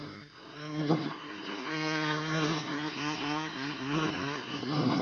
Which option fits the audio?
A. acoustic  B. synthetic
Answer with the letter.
B